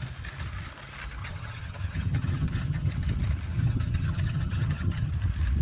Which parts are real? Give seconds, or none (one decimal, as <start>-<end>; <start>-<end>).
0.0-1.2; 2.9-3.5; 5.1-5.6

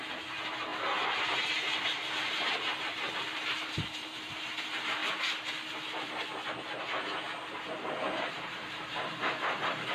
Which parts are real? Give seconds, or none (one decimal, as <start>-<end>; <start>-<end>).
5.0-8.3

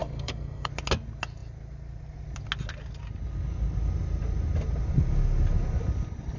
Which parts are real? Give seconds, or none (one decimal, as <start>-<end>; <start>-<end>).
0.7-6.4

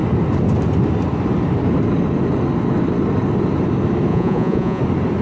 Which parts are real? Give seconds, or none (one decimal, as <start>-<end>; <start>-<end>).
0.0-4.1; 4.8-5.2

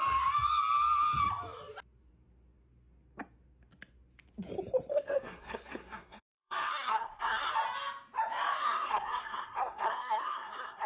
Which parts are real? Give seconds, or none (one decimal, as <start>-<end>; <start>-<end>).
0.0-4.9; 7.5-8.6

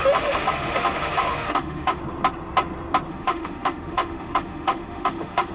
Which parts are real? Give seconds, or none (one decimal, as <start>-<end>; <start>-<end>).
2.0-3.1

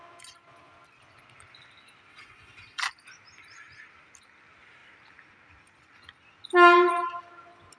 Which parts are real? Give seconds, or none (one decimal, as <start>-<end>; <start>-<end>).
0.0-2.1; 2.8-7.8